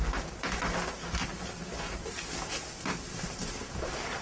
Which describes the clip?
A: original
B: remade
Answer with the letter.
A